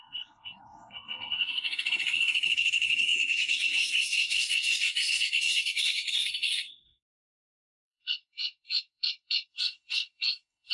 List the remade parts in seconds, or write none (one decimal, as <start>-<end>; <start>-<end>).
0.0-10.7